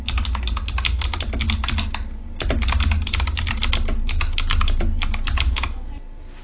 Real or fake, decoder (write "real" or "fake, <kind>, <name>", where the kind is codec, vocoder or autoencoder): real